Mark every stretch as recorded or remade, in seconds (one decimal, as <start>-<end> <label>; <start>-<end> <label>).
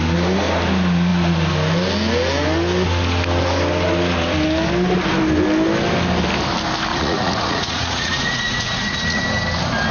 0.0-6.9 recorded; 6.9-9.2 remade; 9.2-9.9 recorded